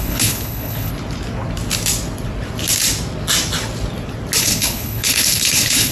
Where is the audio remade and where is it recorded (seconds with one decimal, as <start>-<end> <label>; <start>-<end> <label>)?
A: 0.0-0.9 remade; 0.9-4.4 recorded; 4.4-5.9 remade